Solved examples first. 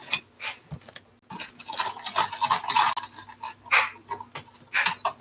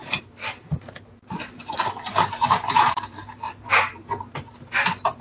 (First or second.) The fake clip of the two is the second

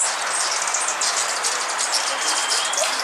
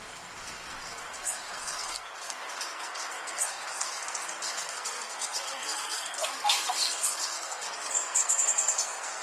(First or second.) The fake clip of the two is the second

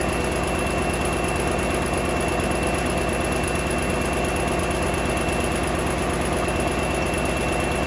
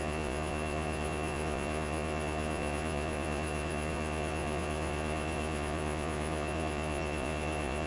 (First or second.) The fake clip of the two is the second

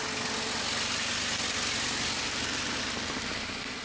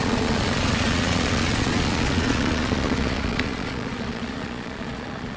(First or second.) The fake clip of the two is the second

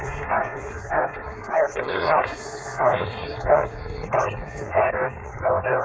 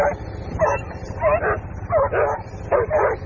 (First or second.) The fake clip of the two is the first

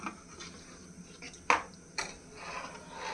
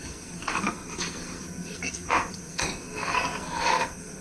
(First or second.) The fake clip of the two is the second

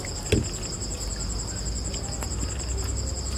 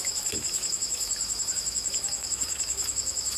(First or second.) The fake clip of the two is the second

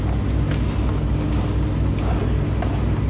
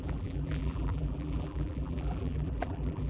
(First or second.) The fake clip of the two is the second